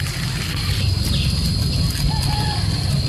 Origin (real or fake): real